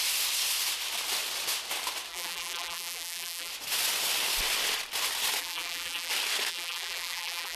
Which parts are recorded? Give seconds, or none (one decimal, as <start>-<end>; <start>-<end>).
0.0-2.1; 3.5-5.4; 6.1-6.5